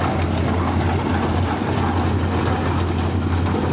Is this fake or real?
real